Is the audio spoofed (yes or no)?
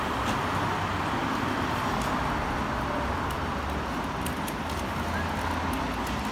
no